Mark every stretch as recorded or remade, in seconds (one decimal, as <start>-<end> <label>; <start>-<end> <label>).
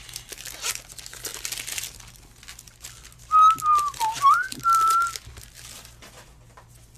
0.0-7.0 recorded